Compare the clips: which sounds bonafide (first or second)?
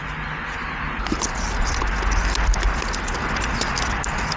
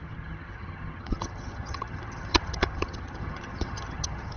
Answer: first